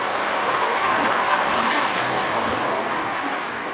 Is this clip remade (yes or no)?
yes